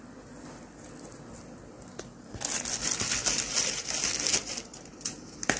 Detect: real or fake real